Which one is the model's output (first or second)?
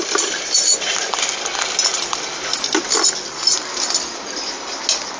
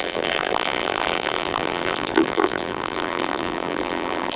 second